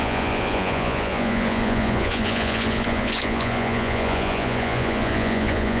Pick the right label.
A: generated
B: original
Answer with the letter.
A